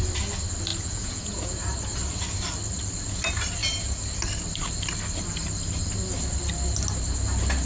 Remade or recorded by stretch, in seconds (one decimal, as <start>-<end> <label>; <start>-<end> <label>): 0.0-0.7 recorded; 0.7-1.6 remade; 1.6-7.7 recorded